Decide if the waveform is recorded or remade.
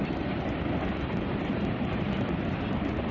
recorded